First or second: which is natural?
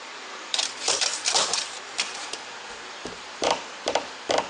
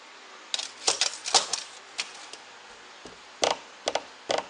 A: second